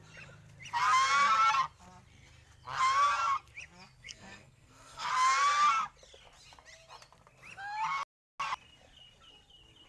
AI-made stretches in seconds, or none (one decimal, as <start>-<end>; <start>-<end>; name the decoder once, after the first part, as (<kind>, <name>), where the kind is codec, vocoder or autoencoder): 4.0-5.1 (codec, SNAC)